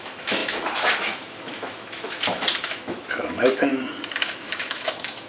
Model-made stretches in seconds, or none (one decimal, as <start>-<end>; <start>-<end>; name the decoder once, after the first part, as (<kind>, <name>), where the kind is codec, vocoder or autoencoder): 0.0-3.7 (autoencoder, DAC-VAE); 4.2-5.3